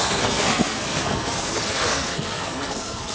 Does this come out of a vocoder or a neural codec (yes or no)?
yes